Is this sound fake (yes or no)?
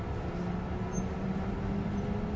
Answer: no